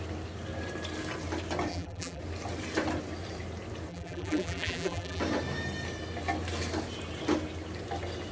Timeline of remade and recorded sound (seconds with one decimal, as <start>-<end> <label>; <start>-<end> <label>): 0.0-1.7 recorded; 1.7-2.2 remade; 2.2-3.9 recorded; 3.9-5.2 remade; 5.2-8.3 recorded